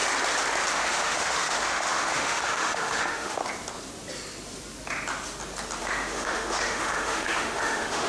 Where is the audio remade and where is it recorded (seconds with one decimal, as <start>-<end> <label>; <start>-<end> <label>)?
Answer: 0.0-0.7 recorded; 0.7-3.4 remade; 3.4-5.8 recorded; 5.8-8.1 remade